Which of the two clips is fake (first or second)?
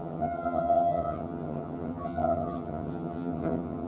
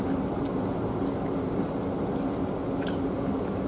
first